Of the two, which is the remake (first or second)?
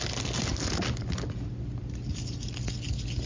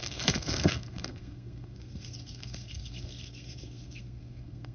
second